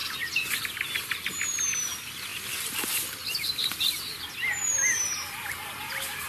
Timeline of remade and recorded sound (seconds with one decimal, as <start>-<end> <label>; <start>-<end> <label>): 0.0-6.3 recorded